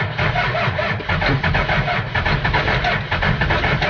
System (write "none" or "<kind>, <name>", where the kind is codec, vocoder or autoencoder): none